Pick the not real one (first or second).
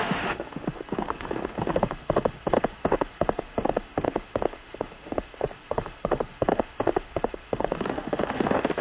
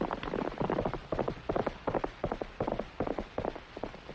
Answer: first